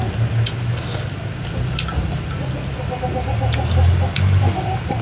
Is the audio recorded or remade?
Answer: recorded